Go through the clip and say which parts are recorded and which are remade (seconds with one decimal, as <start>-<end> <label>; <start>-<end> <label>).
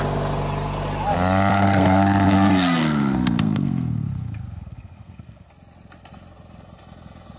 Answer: 0.0-1.5 recorded; 1.5-5.5 remade; 5.5-7.4 recorded